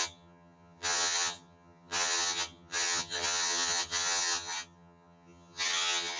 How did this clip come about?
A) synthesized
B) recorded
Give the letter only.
A